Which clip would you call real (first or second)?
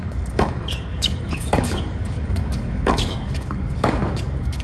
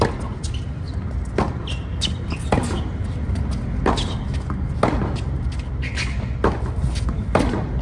second